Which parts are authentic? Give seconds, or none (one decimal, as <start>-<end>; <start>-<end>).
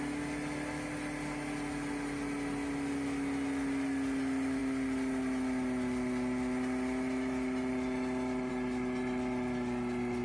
0.0-10.2